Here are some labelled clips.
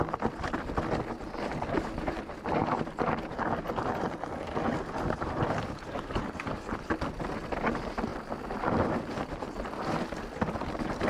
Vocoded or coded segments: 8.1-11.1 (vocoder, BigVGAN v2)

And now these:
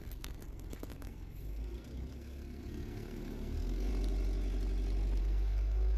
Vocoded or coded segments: 0.0-3.9 (codec, SNAC); 5.2-6.0

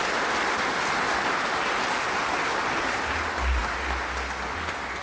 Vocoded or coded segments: 0.0-2.3 (vocoder, BigVGAN v2)

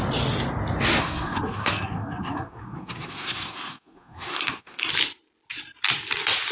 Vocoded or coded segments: 1.0-4.9 (codec, SNAC)

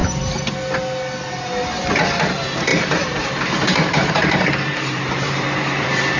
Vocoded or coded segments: 2.7-6.2 (vocoder, BigVGAN v2)

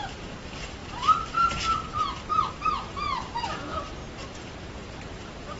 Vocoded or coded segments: 0.0-4.0 (vocoder, BigVGAN v2); 4.6-5.6

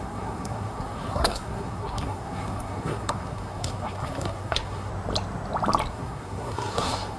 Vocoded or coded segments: 0.0-4.9 (codec, SNAC); 5.9-7.2

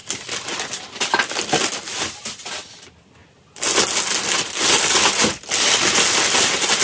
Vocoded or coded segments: none